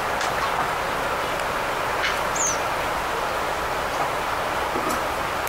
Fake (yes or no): no